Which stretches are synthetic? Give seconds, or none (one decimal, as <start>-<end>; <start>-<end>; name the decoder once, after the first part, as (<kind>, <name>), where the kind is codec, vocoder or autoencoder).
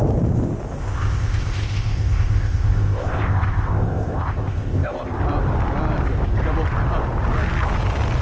0.8-5.2 (codec, ZipCodec)